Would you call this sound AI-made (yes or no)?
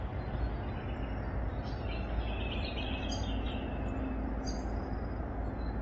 no